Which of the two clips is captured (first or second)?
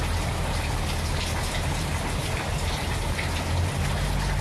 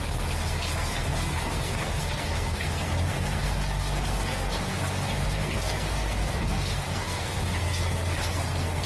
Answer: first